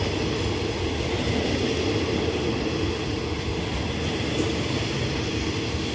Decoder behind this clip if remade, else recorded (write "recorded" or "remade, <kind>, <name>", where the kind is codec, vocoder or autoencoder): recorded